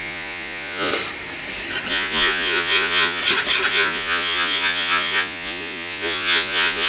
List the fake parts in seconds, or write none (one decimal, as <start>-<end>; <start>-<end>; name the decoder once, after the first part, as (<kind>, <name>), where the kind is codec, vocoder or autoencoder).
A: 0.0-0.9 (vocoder, Vocos); 1.9-3.2; 3.7-6.9